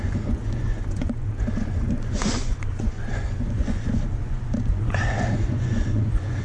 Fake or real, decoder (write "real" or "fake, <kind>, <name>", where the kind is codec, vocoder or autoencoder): fake, vocoder, Vocos